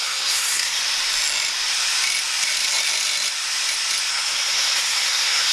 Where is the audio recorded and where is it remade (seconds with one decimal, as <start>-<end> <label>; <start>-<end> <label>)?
0.0-0.8 remade; 0.8-4.1 recorded; 4.1-5.5 remade